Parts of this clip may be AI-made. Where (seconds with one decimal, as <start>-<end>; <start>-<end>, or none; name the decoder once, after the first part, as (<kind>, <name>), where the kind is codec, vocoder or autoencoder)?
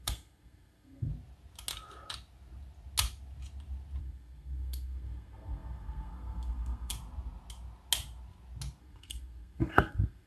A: 0.0-1.1 (codec, SNAC); 4.0-6.9; 8.8-10.3